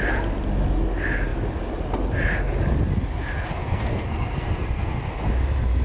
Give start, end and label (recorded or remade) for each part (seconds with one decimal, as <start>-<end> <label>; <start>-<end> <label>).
0.0-3.6 recorded; 3.6-5.0 remade; 5.0-5.8 recorded